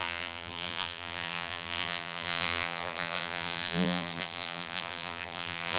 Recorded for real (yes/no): no